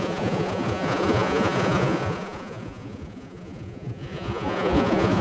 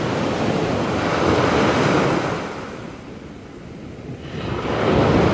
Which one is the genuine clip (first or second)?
second